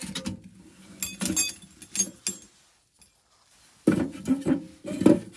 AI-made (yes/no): no